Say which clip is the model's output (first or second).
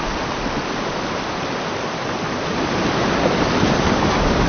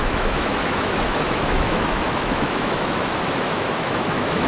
second